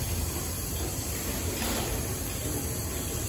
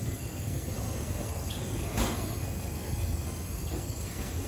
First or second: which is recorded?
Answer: first